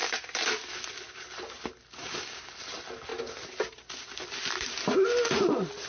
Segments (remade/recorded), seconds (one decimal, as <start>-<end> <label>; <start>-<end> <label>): 0.0-2.0 recorded; 2.0-2.5 remade; 2.5-5.9 recorded